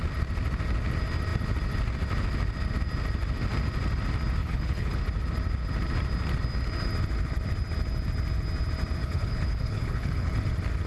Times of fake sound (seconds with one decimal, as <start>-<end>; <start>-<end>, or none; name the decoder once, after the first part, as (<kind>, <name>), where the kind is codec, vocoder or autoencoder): 4.4-5.0 (codec, HILCodec); 9.0-10.4

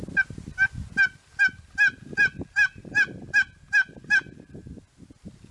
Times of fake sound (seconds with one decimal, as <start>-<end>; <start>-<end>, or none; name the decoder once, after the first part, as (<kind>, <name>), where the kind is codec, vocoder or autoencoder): none

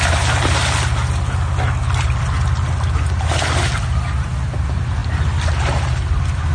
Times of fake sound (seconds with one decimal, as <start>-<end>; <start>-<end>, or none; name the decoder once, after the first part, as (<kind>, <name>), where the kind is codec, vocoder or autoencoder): none